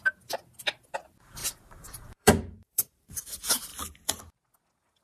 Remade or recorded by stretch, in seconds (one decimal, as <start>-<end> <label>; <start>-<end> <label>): 0.0-1.4 recorded; 1.4-3.2 remade; 3.2-5.0 recorded